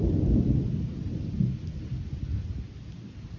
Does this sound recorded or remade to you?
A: recorded